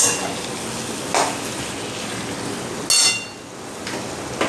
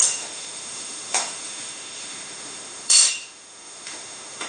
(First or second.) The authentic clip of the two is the first